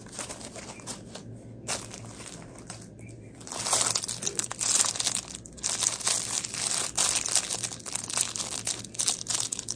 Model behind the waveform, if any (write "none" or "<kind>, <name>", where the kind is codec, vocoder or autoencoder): none